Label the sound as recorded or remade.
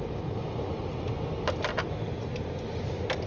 recorded